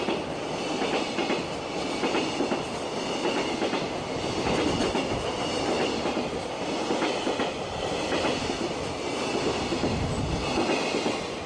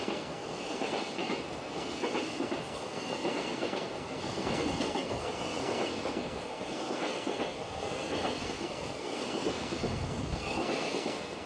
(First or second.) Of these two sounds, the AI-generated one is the second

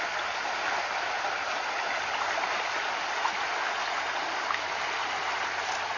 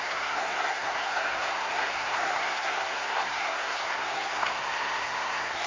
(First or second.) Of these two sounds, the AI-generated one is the second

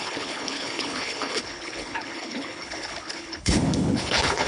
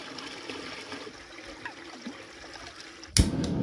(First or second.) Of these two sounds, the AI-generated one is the first